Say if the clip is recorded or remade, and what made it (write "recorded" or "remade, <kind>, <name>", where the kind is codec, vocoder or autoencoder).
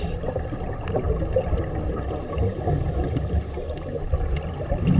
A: recorded